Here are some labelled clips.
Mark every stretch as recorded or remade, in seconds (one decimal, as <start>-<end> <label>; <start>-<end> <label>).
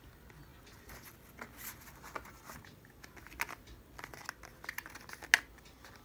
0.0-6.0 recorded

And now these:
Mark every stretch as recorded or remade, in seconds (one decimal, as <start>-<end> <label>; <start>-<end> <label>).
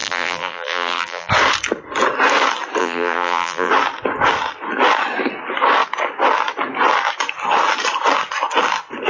0.0-1.3 remade; 1.3-2.8 recorded; 2.8-3.7 remade; 3.7-9.1 recorded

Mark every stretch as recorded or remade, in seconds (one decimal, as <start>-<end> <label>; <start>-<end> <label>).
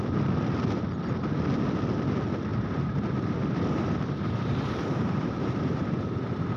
0.0-2.5 recorded; 2.5-6.6 remade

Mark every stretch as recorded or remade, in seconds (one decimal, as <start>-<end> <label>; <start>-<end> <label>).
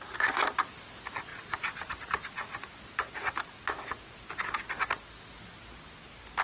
0.0-6.4 recorded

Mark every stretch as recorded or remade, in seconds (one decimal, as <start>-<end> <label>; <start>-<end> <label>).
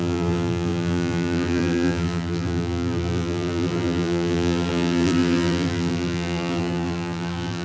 0.0-7.6 remade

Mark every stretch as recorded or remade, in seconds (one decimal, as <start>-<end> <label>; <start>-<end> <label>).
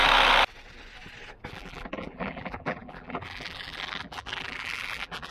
0.0-1.5 recorded; 1.5-5.3 remade